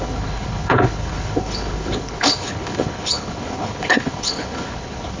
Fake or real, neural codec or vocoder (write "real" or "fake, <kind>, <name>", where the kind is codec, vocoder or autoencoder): fake, codec, HILCodec